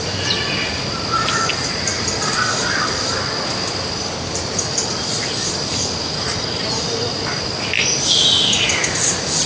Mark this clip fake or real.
real